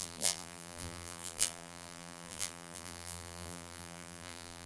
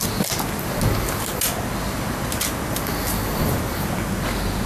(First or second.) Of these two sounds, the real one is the second